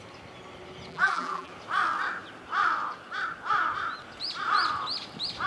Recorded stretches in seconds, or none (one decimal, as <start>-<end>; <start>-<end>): 0.0-0.9; 1.5-5.5